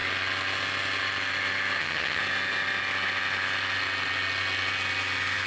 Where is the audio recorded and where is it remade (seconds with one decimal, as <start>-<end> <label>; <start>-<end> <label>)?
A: 0.0-1.8 recorded; 1.8-2.2 remade; 2.2-5.5 recorded